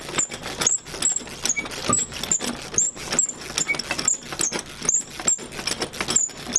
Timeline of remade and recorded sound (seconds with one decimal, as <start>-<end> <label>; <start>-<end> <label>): 0.0-6.6 recorded